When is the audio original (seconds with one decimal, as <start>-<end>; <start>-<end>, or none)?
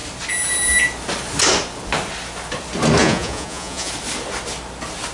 0.0-3.0; 3.9-5.1